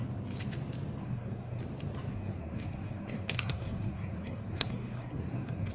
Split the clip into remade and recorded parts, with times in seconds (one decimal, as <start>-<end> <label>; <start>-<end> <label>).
0.0-1.0 recorded; 1.0-1.6 remade; 1.6-2.1 recorded; 2.1-5.7 remade